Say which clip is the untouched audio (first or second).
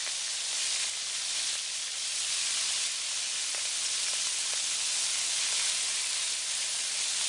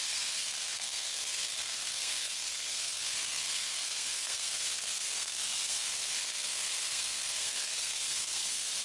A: first